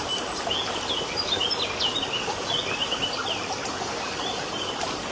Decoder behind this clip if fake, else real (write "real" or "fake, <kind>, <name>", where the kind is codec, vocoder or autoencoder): fake, vocoder, BigVGAN v2